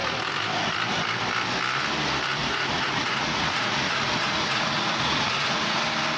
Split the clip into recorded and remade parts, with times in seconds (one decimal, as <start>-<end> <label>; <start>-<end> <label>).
0.0-2.4 recorded; 2.4-5.8 remade; 5.8-6.2 recorded